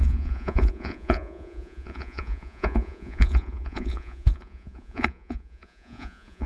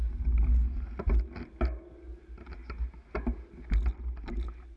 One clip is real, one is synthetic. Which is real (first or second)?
second